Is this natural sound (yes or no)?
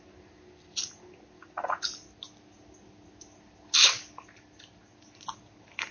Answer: yes